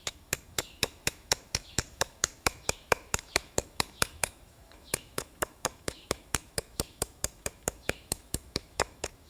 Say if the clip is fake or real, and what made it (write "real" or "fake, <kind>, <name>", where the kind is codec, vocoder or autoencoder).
fake, autoencoder, DAC-VAE